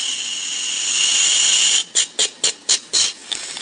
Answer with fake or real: real